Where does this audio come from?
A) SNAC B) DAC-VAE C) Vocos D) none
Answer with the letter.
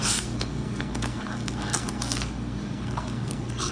A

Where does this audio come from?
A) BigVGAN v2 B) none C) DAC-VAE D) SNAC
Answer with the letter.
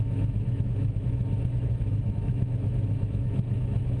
C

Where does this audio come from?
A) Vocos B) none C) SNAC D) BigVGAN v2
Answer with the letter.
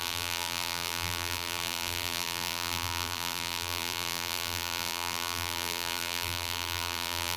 D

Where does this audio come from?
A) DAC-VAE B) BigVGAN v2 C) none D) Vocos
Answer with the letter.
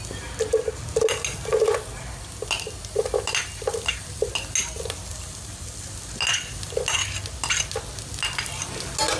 C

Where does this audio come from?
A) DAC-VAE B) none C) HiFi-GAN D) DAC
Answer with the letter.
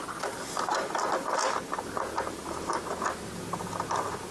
B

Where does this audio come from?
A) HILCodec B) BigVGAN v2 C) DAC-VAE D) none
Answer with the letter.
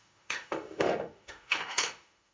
C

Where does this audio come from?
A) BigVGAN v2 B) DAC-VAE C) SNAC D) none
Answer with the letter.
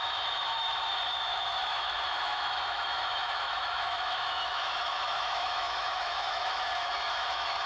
B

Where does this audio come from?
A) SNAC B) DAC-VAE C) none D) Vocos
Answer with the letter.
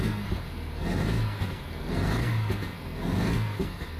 A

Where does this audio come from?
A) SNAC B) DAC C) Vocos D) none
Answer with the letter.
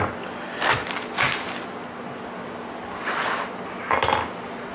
D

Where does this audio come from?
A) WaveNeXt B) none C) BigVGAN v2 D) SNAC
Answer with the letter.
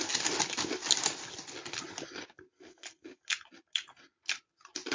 B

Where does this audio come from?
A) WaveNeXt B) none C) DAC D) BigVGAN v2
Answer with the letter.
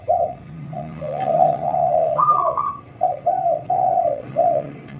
A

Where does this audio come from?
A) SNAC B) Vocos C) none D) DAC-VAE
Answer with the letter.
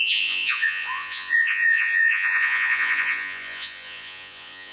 B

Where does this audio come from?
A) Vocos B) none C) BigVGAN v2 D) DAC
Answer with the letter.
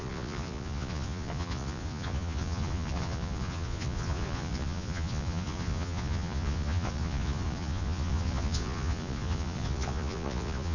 A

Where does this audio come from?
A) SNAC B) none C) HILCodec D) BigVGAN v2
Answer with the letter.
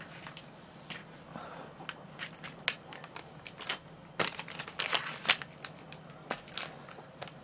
B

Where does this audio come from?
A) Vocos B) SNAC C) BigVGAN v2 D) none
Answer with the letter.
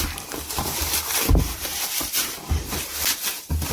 C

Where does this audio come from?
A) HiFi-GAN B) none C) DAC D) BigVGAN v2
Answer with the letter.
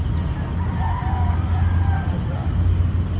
B